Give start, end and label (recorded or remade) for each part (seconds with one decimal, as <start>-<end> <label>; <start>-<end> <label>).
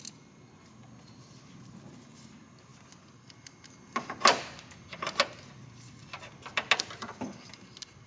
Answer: 0.0-8.1 recorded